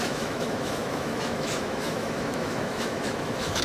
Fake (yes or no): yes